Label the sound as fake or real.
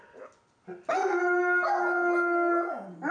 real